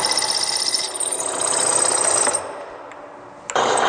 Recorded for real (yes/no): yes